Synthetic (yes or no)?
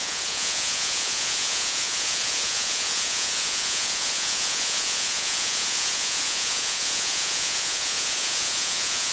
yes